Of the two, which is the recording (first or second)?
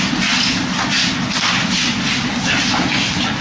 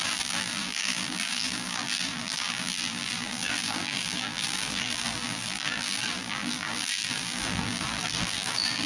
first